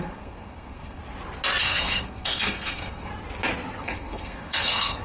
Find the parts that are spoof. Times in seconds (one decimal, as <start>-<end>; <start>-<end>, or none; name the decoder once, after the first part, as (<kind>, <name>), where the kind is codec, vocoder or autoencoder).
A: 0.0-1.0 (codec, SNAC); 1.6-3.1; 3.8-5.0